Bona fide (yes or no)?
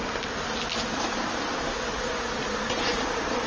yes